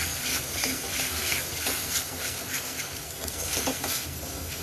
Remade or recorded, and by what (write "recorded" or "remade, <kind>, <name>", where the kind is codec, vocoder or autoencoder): remade, codec, SNAC